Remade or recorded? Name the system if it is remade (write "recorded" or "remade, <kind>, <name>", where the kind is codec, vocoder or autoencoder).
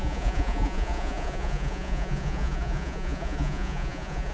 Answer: remade, vocoder, Vocos